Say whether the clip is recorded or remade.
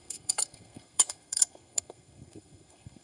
remade